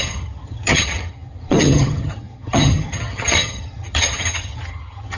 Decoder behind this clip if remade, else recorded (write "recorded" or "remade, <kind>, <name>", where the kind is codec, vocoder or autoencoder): remade, vocoder, HiFi-GAN